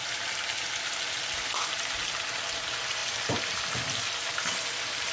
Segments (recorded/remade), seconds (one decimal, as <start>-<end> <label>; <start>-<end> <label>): 0.0-5.1 recorded

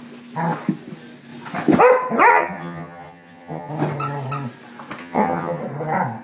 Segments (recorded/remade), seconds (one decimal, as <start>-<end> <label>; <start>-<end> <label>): 0.0-2.3 recorded; 2.3-3.7 remade; 3.7-5.0 recorded; 5.0-5.6 remade; 5.6-6.2 recorded

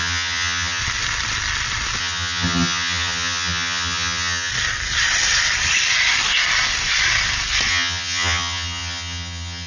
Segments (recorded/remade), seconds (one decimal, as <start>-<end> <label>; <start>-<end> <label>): 0.0-0.8 remade; 0.8-2.0 recorded; 2.0-4.5 remade; 4.5-7.7 recorded; 7.7-9.7 remade

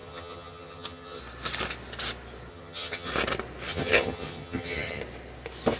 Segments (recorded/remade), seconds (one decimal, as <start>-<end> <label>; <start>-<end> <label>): 0.0-1.2 remade; 1.2-2.5 recorded; 2.5-3.1 remade; 3.1-3.7 recorded; 3.7-5.0 remade; 5.0-5.8 recorded

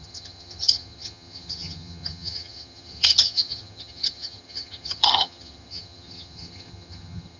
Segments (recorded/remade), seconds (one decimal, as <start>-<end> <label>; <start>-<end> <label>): 0.0-7.4 remade